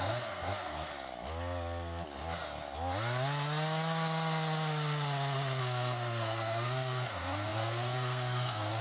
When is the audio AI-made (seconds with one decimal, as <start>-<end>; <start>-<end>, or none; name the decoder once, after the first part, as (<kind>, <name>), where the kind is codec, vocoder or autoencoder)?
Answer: 0.0-0.9 (codec, SNAC); 5.6-8.8